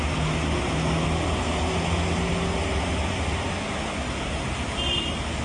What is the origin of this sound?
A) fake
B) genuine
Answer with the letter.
B